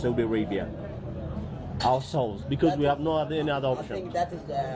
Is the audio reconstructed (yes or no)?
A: no